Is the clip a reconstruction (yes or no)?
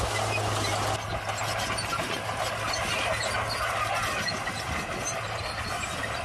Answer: no